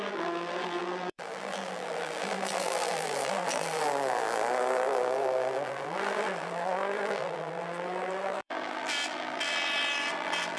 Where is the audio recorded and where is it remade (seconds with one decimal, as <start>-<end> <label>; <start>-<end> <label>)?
0.0-10.6 remade